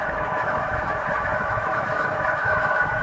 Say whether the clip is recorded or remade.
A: remade